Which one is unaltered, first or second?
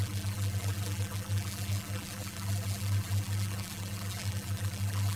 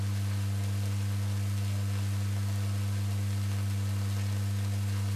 second